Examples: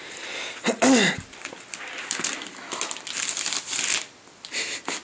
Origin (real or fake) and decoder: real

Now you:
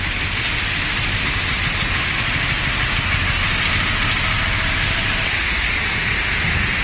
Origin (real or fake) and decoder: real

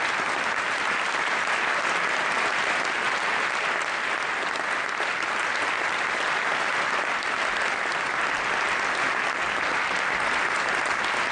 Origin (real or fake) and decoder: real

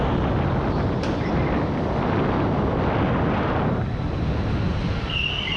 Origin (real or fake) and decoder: real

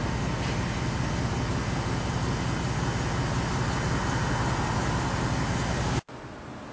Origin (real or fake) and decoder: real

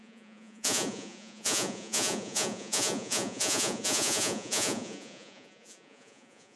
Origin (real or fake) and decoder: fake, vocoder, Vocos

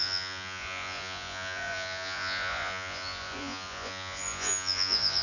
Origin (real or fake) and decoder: fake, vocoder, Vocos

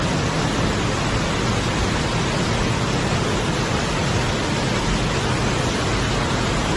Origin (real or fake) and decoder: real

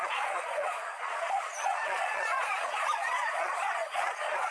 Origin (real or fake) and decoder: fake, vocoder, Vocos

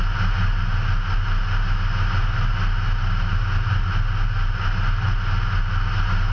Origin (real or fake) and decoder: real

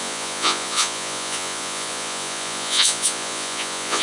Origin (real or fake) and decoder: fake, vocoder, Vocos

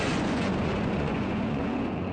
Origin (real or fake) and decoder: fake, vocoder, Vocos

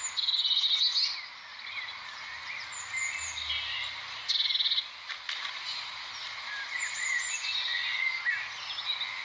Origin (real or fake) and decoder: real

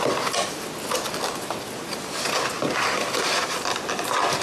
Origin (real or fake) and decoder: real